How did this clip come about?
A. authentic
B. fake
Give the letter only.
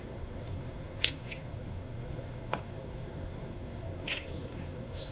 B